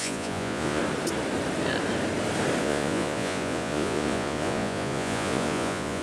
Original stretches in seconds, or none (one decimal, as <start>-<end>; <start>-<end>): 0.8-2.6